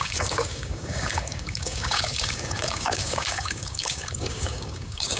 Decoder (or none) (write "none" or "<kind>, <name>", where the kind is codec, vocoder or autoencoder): codec, DAC